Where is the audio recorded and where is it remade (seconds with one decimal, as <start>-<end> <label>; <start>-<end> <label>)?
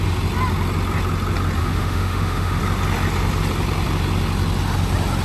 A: 0.0-1.6 recorded; 1.6-2.6 remade; 2.6-5.2 recorded